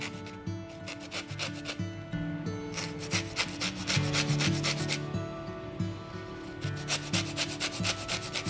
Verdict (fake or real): real